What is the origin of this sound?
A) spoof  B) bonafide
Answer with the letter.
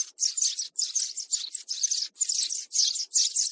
B